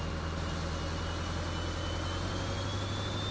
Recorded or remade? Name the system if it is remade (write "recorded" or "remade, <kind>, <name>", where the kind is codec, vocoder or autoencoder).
recorded